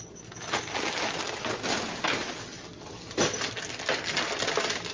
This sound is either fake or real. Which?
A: real